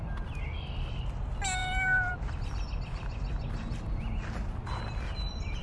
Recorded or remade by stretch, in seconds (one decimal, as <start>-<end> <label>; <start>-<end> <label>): 0.0-5.6 recorded